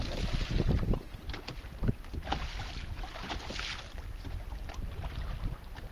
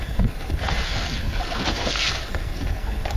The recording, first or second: first